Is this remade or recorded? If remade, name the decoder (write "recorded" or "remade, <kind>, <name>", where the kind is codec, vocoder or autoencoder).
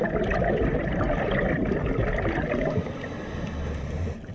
recorded